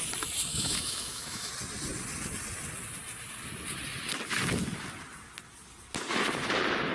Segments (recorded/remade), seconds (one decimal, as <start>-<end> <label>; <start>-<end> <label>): 0.0-0.5 recorded; 0.5-1.5 remade; 1.5-6.9 recorded

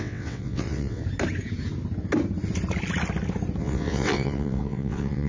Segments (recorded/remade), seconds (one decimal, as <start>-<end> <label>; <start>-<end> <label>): 0.0-1.0 remade; 1.0-3.6 recorded; 3.6-5.3 remade

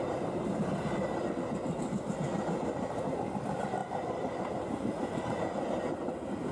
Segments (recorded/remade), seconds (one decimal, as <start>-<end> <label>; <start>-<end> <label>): 0.0-6.5 recorded

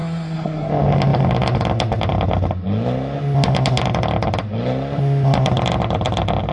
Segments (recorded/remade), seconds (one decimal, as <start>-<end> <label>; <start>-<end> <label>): 0.0-0.7 remade; 0.7-6.5 recorded

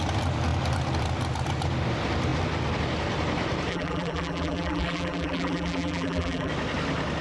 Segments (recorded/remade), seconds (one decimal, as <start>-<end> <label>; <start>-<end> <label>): 0.0-3.7 recorded; 3.7-6.5 remade; 6.5-7.2 recorded

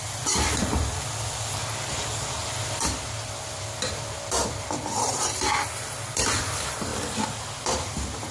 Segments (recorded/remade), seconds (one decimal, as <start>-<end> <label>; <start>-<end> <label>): 0.0-1.6 remade; 1.6-2.6 recorded; 2.6-6.9 remade; 6.9-7.6 recorded; 7.6-8.3 remade